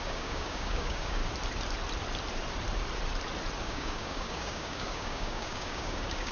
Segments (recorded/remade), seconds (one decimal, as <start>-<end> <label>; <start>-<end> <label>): 0.0-1.2 remade; 1.2-3.6 recorded; 3.6-6.3 remade